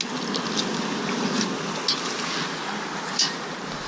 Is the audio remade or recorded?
recorded